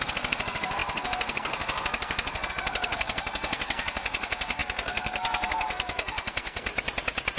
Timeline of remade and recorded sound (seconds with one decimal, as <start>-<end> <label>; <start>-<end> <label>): 0.0-6.7 remade; 6.7-7.4 recorded

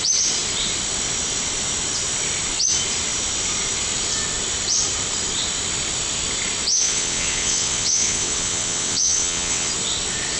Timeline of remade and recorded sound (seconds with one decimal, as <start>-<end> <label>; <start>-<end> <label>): 0.0-6.7 recorded; 6.7-9.7 remade; 9.7-10.4 recorded

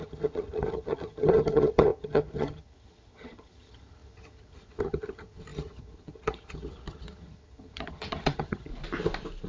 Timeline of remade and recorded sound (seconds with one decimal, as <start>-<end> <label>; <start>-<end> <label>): 0.0-8.7 remade; 8.7-9.5 recorded

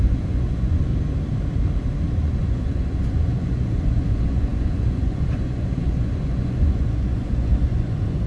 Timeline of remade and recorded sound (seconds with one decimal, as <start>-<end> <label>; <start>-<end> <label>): 0.0-0.9 remade; 0.9-2.2 recorded; 2.2-8.3 remade